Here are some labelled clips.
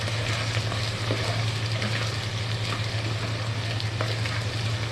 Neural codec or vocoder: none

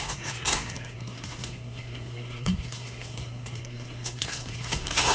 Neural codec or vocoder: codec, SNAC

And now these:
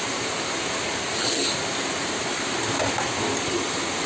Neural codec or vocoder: none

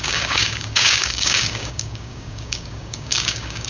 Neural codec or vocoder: codec, DAC